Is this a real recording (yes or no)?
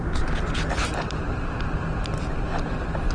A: yes